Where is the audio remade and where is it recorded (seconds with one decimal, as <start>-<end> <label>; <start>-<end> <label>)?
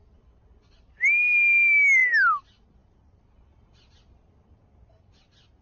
0.0-5.6 recorded